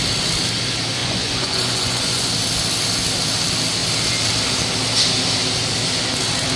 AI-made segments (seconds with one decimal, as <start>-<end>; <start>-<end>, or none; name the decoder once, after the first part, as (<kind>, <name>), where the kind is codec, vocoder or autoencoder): 1.0-2.3 (vocoder, Vocos)